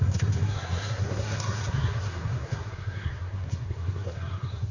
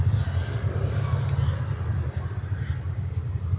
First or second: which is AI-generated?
first